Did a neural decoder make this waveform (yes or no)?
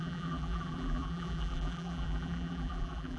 yes